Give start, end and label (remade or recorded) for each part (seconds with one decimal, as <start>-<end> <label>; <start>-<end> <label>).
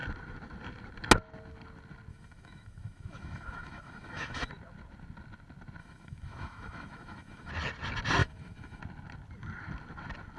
0.0-2.1 recorded; 2.1-4.5 remade; 4.5-5.8 recorded; 5.8-7.5 remade; 7.5-8.2 recorded; 8.2-8.8 remade; 8.8-10.4 recorded